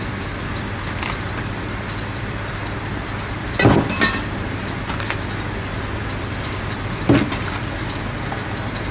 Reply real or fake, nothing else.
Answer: fake